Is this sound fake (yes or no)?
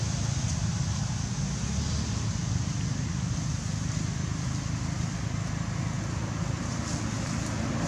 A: no